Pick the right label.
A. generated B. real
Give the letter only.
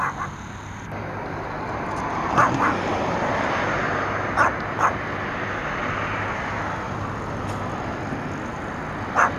B